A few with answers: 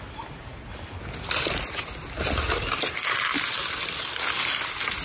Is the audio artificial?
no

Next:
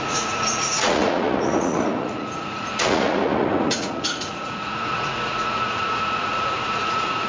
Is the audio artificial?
yes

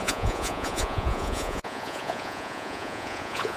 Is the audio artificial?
yes